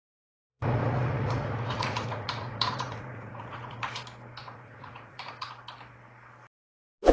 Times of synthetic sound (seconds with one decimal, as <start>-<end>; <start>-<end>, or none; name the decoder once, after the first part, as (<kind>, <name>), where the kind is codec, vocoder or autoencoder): 0.5-4.0 (vocoder, Vocos); 4.4-5.5